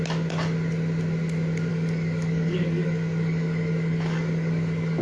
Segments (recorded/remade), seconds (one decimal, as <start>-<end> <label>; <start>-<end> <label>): 0.0-1.7 recorded; 1.7-5.0 remade